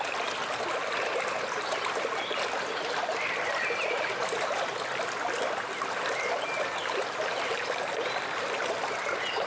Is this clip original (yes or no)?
yes